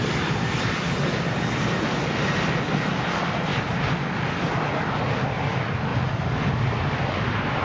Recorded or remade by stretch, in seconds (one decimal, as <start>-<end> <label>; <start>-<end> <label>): 0.0-7.6 recorded